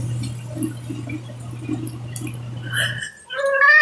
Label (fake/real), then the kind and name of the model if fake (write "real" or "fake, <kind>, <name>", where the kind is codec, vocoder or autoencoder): real